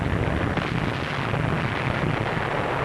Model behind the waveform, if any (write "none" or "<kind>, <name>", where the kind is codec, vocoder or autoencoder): none